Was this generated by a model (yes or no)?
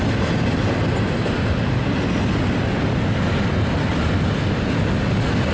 no